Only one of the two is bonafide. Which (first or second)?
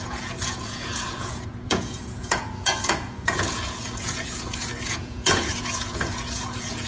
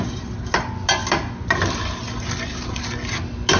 second